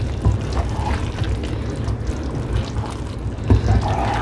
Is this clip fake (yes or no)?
no